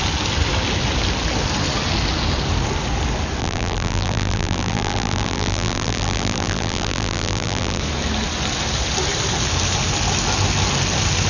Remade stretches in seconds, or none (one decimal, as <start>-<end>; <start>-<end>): 3.4-7.8